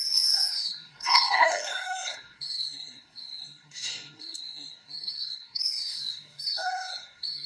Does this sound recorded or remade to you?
remade